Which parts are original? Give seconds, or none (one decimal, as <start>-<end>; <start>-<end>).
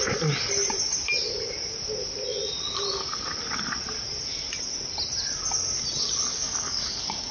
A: 0.0-6.3